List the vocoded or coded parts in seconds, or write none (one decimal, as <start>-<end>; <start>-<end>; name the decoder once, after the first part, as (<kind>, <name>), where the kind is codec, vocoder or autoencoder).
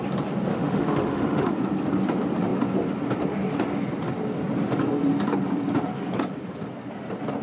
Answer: 0.5-1.5 (autoencoder, DAC-VAE)